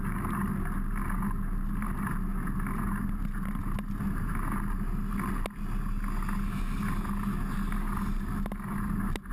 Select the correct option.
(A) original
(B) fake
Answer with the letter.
A